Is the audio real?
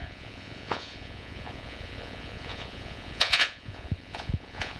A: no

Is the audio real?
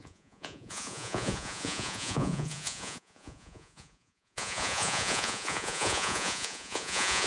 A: no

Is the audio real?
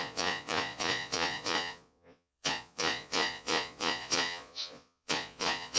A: no